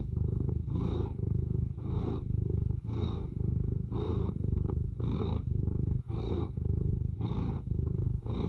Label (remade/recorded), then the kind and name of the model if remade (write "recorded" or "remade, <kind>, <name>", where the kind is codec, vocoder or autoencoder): remade, codec, DAC